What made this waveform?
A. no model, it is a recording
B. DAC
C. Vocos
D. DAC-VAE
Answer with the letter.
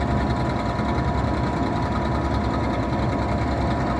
A